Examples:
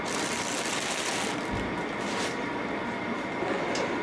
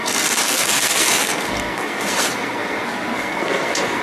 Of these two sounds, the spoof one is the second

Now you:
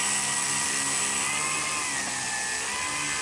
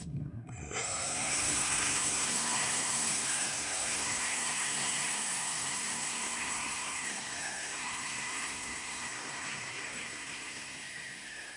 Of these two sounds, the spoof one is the second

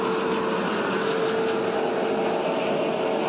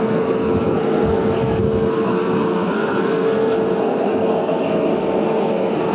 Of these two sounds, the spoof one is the second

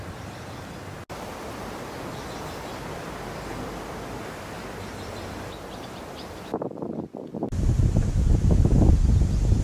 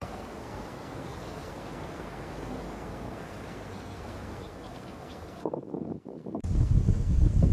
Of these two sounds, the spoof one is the second